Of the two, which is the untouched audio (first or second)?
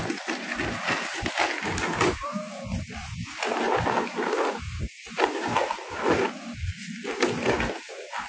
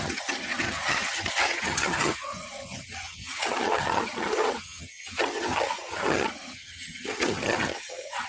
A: first